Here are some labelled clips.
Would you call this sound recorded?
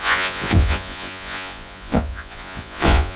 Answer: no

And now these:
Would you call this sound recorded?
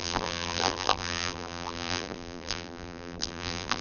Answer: no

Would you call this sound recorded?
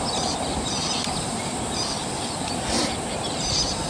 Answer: yes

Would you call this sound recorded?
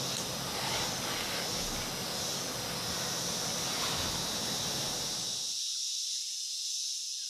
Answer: yes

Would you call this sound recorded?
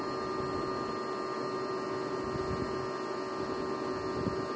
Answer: yes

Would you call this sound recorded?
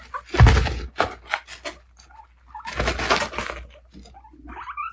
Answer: yes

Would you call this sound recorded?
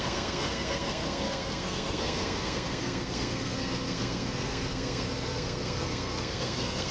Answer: no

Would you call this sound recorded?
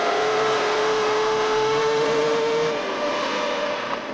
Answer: no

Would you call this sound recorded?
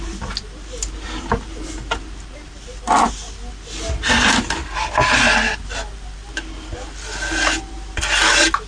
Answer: yes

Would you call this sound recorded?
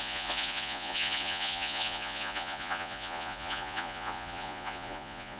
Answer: no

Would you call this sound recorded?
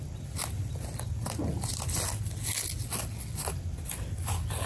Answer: yes